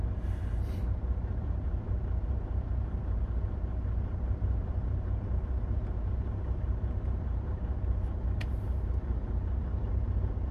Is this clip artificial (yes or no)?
yes